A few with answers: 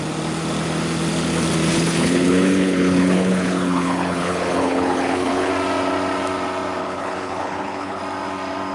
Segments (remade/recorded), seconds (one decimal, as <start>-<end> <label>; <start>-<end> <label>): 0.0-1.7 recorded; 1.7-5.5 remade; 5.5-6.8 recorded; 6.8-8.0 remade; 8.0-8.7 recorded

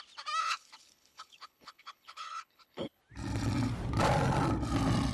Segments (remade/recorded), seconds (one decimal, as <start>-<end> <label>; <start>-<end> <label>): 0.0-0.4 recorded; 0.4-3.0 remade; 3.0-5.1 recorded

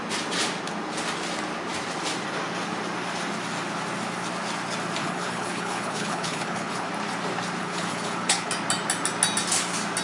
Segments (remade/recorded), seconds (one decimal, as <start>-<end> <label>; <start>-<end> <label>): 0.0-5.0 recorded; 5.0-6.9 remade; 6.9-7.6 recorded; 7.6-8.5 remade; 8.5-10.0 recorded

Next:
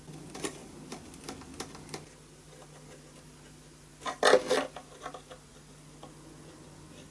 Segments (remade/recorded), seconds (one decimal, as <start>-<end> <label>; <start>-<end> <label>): 0.0-7.1 recorded

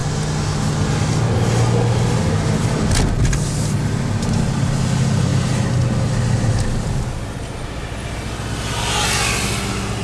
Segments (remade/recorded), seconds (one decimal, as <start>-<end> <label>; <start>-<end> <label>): 0.0-10.0 recorded

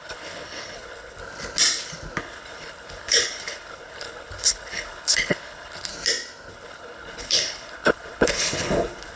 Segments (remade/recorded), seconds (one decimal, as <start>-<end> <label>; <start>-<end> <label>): 0.0-1.2 remade; 1.2-2.2 recorded; 2.2-5.9 remade; 5.9-6.5 recorded; 6.5-9.2 remade

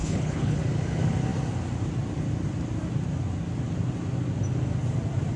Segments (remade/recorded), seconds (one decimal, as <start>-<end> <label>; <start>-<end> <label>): 0.0-0.6 remade; 0.6-5.4 recorded